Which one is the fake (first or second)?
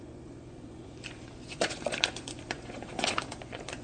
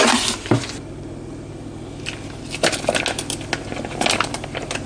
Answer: first